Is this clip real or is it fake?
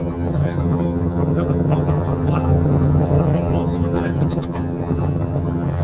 fake